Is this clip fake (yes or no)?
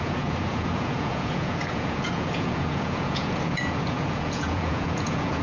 yes